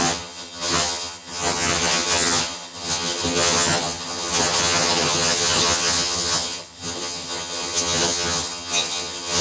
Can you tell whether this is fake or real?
fake